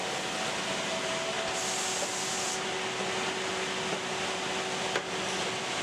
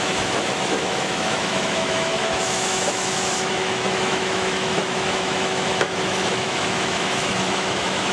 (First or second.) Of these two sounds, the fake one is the second